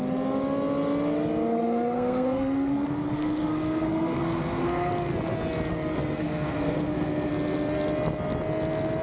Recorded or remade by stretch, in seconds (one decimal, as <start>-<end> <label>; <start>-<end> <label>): 0.0-1.5 recorded; 1.5-4.9 remade; 4.9-5.7 recorded; 5.7-7.3 remade; 7.3-9.0 recorded